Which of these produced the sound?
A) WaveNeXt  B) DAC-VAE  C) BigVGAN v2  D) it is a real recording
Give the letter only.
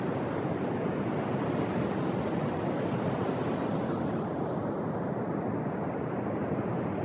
D